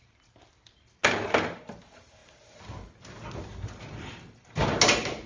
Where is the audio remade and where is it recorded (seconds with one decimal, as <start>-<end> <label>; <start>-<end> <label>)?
0.0-5.3 recorded